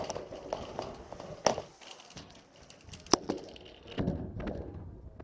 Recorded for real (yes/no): yes